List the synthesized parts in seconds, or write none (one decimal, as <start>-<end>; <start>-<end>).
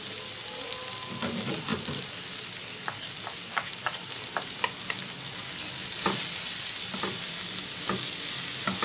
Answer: none